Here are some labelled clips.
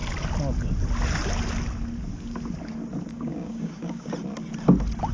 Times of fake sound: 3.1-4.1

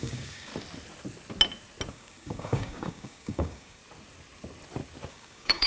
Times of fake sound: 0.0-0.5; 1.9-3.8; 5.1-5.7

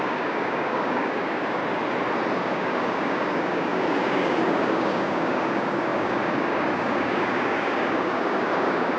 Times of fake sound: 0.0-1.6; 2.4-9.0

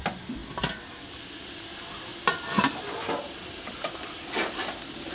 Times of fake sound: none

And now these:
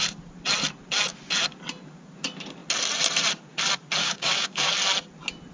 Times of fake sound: 4.0-4.7